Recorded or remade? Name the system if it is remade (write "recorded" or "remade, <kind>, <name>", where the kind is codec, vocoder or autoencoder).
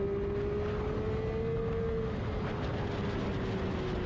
recorded